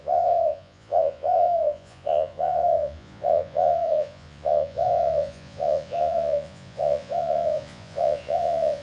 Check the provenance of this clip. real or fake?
fake